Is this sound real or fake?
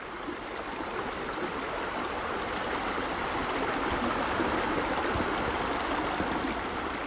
real